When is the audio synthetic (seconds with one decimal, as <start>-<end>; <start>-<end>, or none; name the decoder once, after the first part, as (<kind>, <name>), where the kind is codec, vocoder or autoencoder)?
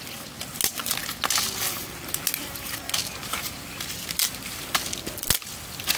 none